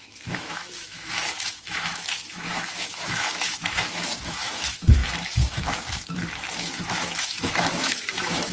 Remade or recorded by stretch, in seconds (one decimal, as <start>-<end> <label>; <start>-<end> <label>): 0.0-8.5 remade